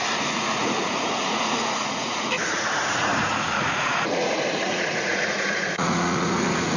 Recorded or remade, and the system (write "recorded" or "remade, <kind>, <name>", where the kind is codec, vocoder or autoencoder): remade, vocoder, Vocos